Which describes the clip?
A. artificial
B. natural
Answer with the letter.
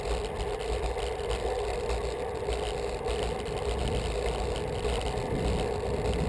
B